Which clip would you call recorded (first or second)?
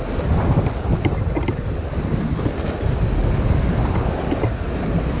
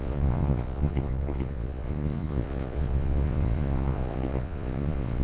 first